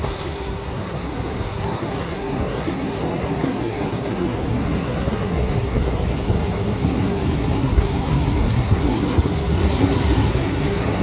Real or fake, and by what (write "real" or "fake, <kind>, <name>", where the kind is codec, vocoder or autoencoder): fake, codec, SNAC